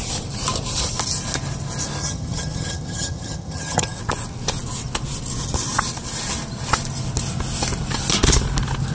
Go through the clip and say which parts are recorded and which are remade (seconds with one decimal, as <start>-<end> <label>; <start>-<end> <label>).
0.0-2.0 recorded; 2.0-4.0 remade; 4.0-8.9 recorded